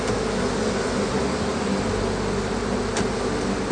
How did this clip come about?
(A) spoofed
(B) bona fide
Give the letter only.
B